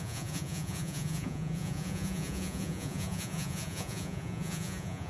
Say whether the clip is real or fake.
fake